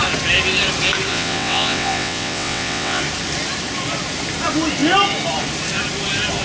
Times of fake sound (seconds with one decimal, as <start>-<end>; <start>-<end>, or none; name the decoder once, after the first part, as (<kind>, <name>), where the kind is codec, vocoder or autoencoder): 1.1-3.0 (vocoder, WaveNeXt)